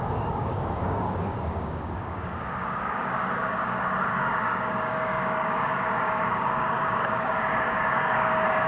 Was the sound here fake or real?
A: fake